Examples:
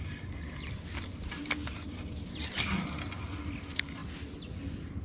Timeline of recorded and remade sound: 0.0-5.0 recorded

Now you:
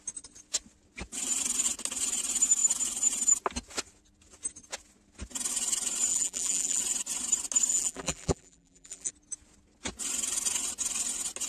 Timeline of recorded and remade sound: 0.0-6.1 recorded; 6.1-6.8 remade; 6.8-7.7 recorded; 7.7-9.1 remade; 9.1-11.5 recorded

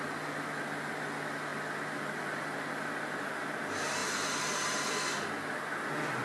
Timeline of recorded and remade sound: 0.0-4.0 recorded; 4.0-4.9 remade; 4.9-6.2 recorded

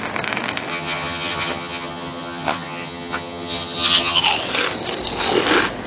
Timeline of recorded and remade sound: 0.0-0.7 recorded; 0.7-4.2 remade; 4.2-5.9 recorded

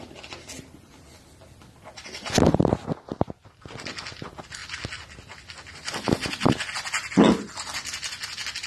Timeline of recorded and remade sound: 0.0-8.7 recorded

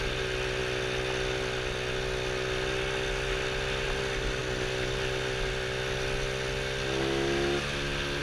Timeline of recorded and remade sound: 0.0-8.2 recorded